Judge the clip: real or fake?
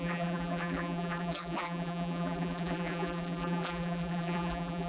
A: fake